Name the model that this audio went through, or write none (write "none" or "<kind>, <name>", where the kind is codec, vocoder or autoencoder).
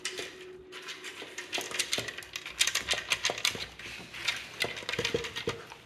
none